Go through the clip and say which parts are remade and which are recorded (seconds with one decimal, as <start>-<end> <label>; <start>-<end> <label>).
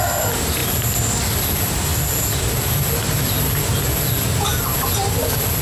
0.0-5.6 recorded